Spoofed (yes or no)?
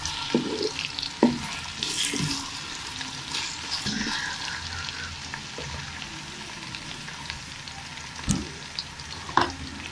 no